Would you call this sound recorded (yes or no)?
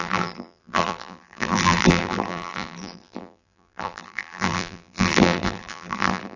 no